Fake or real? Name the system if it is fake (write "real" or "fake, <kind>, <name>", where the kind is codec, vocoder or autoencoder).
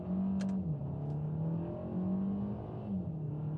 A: real